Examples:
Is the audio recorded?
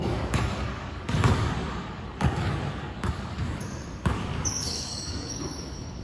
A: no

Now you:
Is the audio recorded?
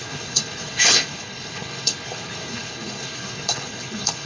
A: no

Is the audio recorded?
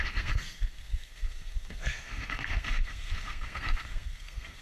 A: no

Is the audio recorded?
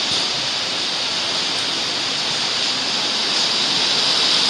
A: yes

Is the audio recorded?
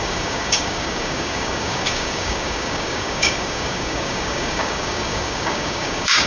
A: no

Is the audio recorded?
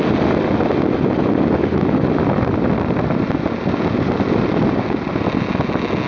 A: yes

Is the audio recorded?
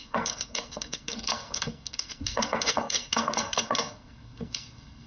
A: no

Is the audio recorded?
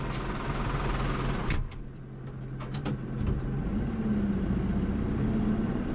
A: yes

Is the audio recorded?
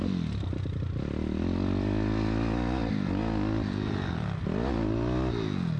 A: yes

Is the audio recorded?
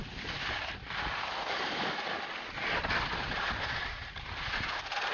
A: yes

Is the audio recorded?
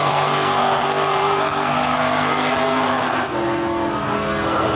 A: no